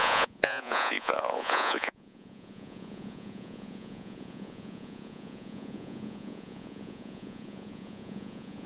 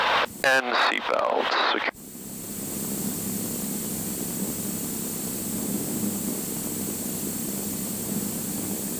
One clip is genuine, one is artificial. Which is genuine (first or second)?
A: second